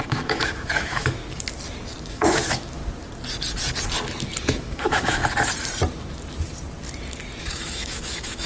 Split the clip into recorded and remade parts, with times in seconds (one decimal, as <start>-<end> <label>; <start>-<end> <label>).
0.0-1.2 remade; 1.2-2.0 recorded; 2.0-2.8 remade; 2.8-4.4 recorded; 4.4-5.2 remade; 5.2-7.4 recorded; 7.4-8.5 remade